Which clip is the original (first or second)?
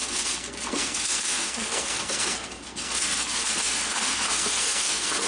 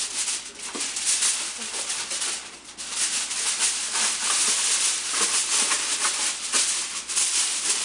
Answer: second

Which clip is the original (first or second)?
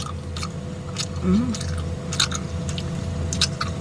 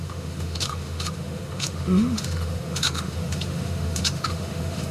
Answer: first